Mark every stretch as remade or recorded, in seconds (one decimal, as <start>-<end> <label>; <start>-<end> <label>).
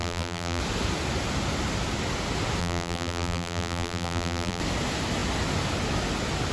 0.0-0.6 remade; 0.6-2.6 recorded; 2.6-4.6 remade; 4.6-6.5 recorded